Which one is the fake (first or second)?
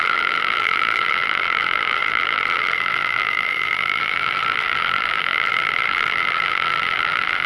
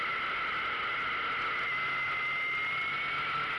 first